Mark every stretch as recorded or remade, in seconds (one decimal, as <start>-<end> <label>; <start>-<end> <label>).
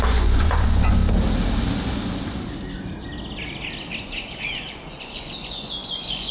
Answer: 0.0-1.0 remade; 1.0-4.0 recorded; 4.0-6.3 remade